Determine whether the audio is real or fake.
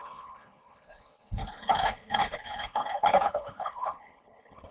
fake